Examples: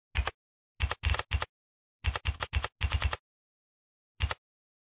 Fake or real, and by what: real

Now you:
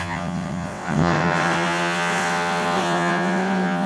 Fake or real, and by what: fake, vocoder, WaveNeXt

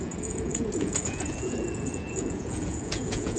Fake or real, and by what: fake, vocoder, Vocos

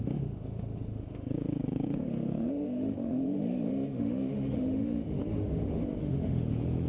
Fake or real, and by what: fake, autoencoder, DAC-VAE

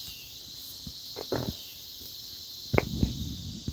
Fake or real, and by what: real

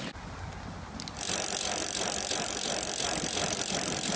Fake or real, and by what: real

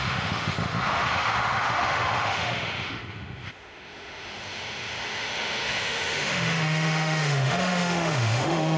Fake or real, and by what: fake, autoencoder, DAC-VAE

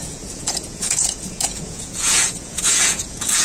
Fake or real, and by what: fake, vocoder, Vocos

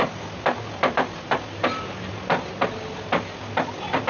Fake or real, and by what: real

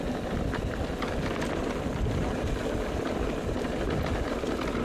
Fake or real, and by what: real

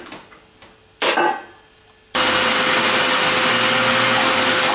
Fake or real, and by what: real